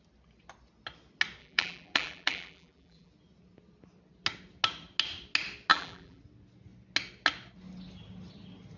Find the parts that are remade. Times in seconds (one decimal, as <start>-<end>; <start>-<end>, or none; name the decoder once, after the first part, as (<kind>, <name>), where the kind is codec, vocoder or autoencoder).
1.4-3.1 (vocoder, BigVGAN v2); 5.7-6.2